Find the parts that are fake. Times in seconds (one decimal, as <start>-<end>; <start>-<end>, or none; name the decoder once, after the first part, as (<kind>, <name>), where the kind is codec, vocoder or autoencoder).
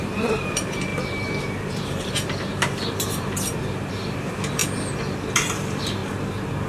0.0-4.6 (vocoder, BigVGAN v2); 5.6-6.0